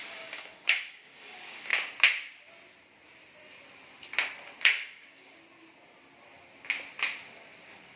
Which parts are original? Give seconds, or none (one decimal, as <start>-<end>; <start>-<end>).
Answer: 1.7-4.6; 5.4-8.0